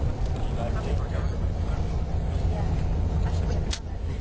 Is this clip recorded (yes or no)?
yes